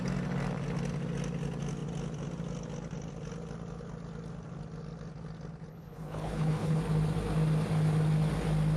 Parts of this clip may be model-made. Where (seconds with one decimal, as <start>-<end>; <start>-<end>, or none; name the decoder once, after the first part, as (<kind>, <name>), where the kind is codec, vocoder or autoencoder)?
5.7-6.8 (codec, HILCodec)